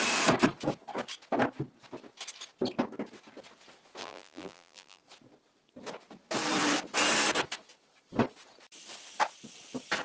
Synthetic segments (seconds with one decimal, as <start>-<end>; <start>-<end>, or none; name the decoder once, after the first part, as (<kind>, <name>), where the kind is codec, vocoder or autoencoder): 4.0-5.0 (vocoder, BigVGAN v2)